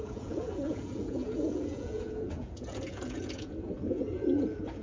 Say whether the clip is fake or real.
fake